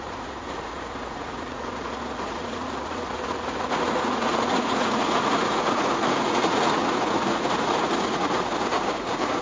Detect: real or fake fake